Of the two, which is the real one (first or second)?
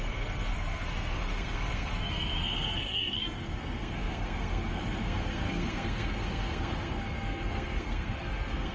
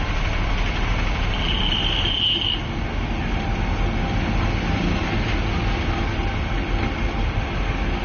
second